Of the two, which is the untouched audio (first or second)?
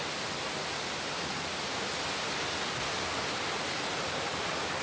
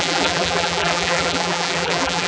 first